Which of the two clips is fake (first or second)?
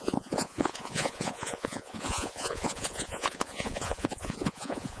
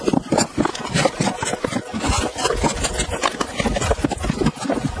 first